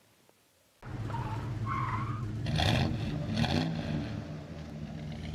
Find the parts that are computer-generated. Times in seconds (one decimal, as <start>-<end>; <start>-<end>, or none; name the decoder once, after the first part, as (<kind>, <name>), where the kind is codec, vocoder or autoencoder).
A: none